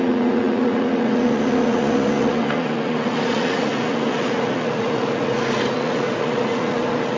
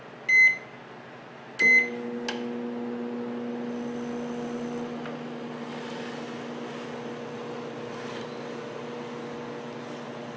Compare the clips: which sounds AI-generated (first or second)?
first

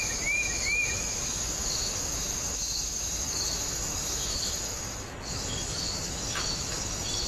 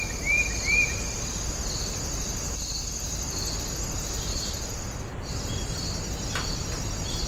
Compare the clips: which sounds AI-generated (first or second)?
first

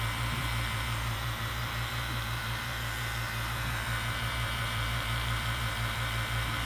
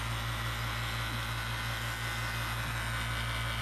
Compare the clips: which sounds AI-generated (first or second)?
first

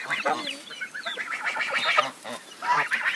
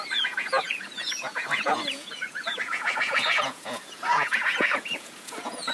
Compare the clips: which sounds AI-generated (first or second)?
second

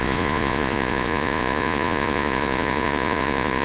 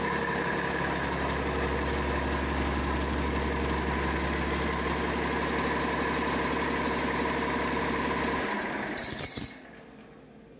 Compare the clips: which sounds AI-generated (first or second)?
first